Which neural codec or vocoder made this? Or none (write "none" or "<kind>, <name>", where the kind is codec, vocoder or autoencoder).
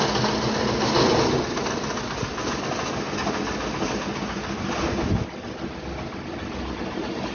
none